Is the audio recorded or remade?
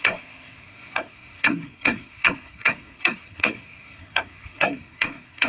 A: remade